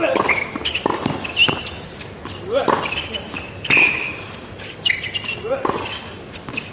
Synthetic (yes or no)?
no